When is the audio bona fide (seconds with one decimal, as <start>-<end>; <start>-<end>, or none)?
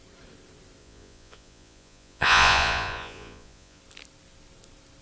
0.0-0.8; 3.8-5.0